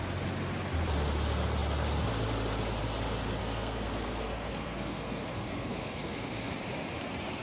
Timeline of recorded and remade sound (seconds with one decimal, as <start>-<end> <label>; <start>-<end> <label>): 0.0-3.4 recorded; 3.4-6.5 remade; 6.5-7.4 recorded